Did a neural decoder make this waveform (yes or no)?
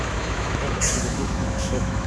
yes